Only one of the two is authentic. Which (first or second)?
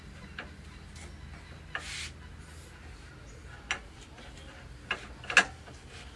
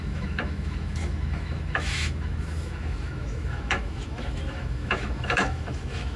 first